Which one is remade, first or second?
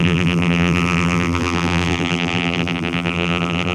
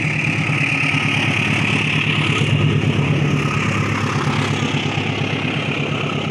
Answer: first